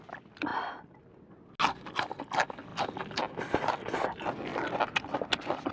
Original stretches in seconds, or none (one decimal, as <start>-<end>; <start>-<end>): 0.0-5.7